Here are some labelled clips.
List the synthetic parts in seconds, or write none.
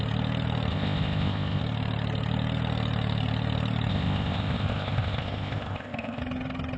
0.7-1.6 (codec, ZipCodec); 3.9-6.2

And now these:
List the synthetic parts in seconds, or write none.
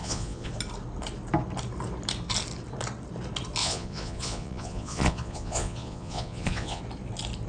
0.0-0.5 (vocoder, Vocos); 3.6-6.8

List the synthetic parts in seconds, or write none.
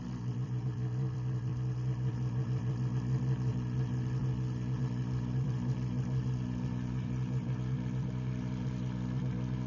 0.0-1.5 (vocoder, BigVGAN v2); 2.1-3.5; 4.8-9.7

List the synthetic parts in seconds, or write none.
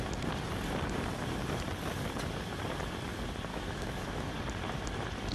3.5-4.3 (autoencoder, DAC-VAE)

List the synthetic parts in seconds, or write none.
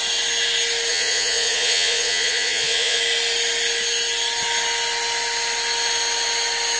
0.9-3.0 (vocoder, Vocos)